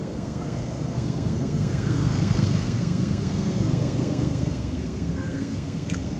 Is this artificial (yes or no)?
yes